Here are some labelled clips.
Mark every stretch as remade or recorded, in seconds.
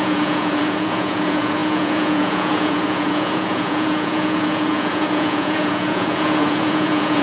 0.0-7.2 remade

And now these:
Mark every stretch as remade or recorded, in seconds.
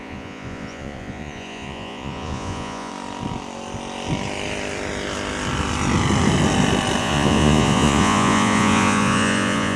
0.0-2.9 remade; 2.9-7.0 recorded; 7.0-9.8 remade